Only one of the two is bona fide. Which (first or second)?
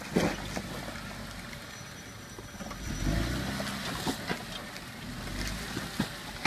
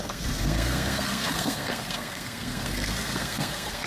first